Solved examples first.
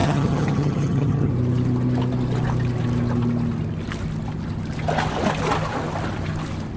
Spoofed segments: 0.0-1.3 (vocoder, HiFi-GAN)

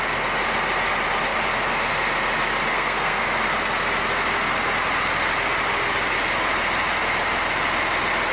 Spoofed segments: 2.7-3.2 (codec, SNAC)

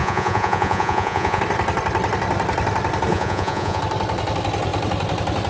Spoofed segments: 0.0-1.4 (vocoder, Vocos); 3.1-3.8

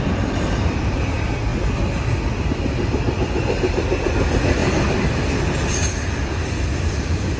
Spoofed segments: none